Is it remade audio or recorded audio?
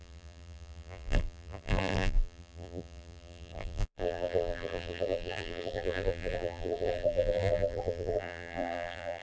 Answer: remade